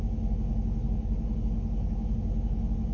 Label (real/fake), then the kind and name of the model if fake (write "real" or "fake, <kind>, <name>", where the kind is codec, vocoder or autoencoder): real